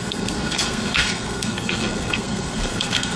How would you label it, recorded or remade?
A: remade